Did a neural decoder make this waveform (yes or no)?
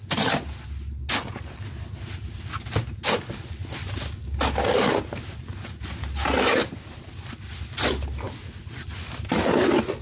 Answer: no